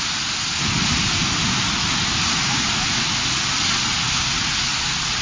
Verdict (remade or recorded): recorded